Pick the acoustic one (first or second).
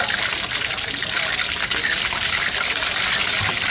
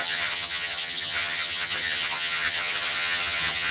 first